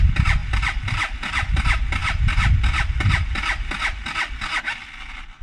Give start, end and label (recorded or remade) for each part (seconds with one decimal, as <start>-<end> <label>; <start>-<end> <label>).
0.0-5.4 recorded